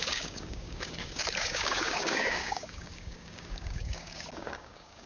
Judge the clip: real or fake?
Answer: fake